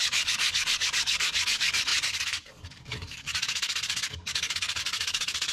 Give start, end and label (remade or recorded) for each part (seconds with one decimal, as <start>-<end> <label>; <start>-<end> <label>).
0.0-5.5 remade